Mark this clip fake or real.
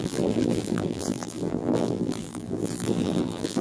fake